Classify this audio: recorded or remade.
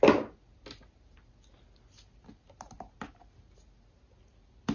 recorded